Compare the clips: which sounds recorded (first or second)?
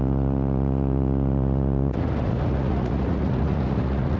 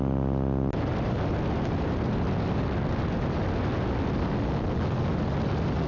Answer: second